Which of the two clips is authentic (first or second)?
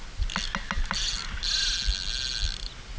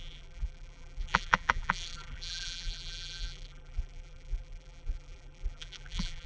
first